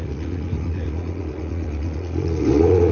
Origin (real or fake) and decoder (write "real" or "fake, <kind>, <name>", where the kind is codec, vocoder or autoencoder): fake, vocoder, Vocos